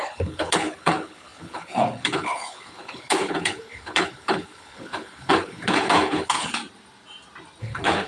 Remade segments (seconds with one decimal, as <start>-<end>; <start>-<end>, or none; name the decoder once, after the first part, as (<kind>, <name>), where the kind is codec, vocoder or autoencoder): 0.0-6.6 (codec, HILCodec); 7.6-8.1